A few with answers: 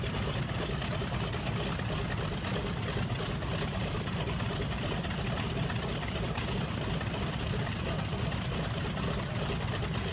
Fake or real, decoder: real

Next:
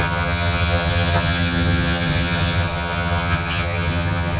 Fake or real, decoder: fake, vocoder, HiFi-GAN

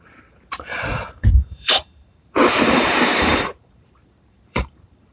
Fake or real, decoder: fake, vocoder, BigVGAN v2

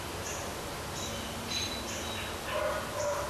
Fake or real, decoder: real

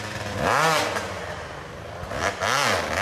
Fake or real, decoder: real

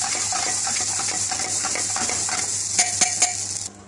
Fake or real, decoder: real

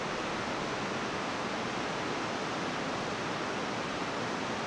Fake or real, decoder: real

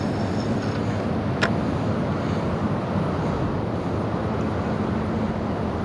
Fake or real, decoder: real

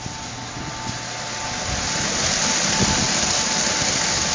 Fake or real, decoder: real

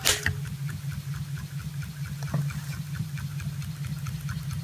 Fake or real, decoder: real